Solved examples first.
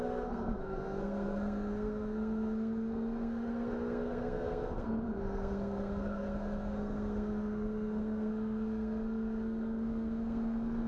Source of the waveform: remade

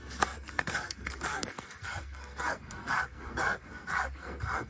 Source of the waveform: remade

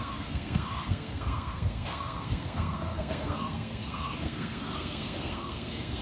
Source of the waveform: remade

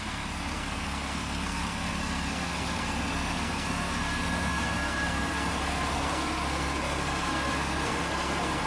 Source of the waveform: remade